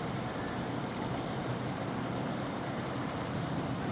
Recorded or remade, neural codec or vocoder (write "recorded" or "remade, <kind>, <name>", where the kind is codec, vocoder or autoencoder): remade, vocoder, BigVGAN v2